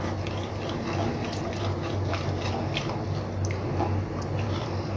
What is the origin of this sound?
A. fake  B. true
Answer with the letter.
B